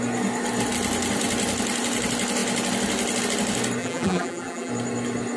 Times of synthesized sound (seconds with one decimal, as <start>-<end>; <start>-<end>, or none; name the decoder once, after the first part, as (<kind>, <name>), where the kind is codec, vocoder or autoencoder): 3.8-4.7 (vocoder, BigVGAN v2)